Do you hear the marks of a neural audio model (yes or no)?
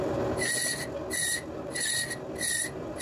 no